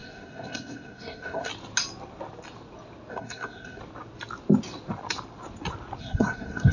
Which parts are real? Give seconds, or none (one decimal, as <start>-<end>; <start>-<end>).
1.5-3.1; 3.8-6.0